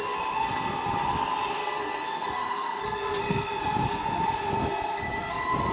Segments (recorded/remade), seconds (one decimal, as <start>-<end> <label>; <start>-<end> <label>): 0.0-1.6 recorded; 1.6-3.6 remade; 3.6-5.7 recorded